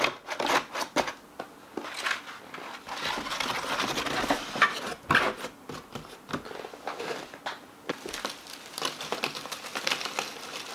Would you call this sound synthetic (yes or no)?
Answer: no